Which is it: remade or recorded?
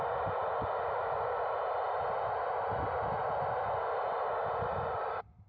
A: recorded